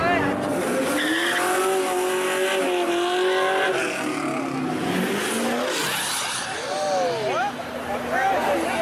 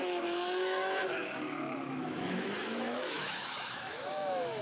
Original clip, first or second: first